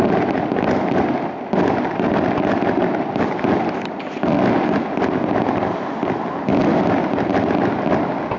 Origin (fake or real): real